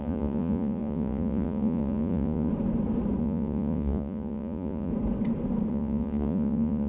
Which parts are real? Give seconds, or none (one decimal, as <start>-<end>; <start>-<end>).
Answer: 2.5-3.2; 4.9-5.7